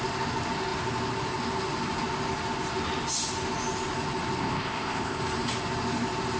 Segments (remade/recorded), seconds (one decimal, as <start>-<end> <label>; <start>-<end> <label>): 0.0-4.4 recorded; 4.4-5.2 remade; 5.2-6.4 recorded